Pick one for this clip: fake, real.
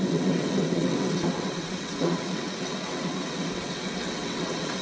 fake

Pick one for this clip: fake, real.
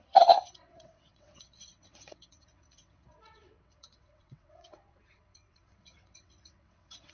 fake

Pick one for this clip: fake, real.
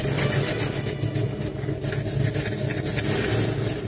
real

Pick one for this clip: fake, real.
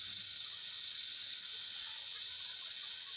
fake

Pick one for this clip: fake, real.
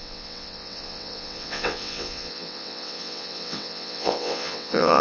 fake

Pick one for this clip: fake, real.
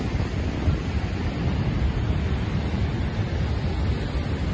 real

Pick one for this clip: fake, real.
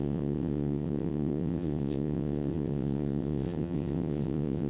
fake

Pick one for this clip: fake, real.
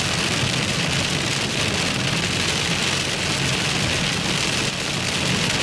real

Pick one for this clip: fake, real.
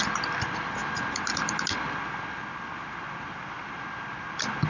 real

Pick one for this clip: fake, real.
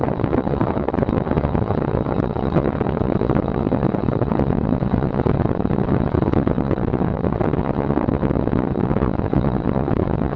fake